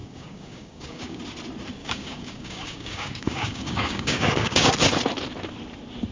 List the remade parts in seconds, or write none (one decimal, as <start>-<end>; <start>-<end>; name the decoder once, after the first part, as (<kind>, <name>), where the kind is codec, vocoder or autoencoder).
0.0-1.2 (codec, DAC); 1.8-4.7